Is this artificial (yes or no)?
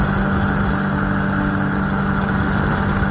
no